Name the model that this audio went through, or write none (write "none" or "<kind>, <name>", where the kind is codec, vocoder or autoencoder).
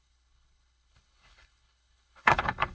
codec, HILCodec